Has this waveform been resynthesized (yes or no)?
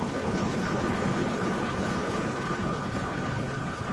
yes